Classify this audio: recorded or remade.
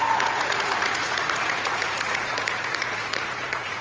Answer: remade